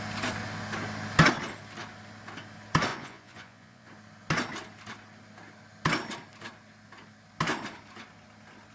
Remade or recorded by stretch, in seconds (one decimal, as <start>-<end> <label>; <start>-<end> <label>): 0.0-2.9 recorded; 2.9-3.9 remade; 3.9-8.7 recorded